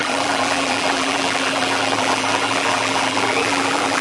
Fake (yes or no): yes